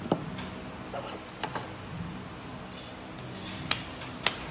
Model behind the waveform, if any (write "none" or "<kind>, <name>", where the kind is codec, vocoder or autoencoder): none